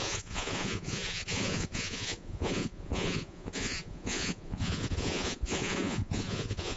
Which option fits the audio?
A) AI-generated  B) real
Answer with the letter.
A